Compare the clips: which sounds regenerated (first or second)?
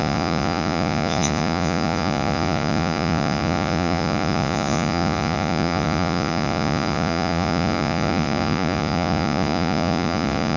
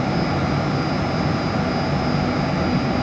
first